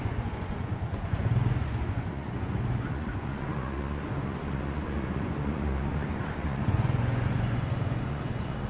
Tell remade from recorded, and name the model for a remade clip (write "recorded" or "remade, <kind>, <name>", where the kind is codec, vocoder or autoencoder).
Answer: remade, vocoder, Vocos